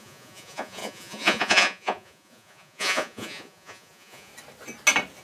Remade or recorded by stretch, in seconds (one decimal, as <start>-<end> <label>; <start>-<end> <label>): 0.0-4.3 remade; 4.3-5.2 recorded